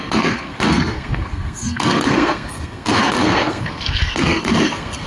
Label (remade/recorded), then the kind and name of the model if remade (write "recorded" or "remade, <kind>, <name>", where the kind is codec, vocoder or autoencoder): remade, codec, SNAC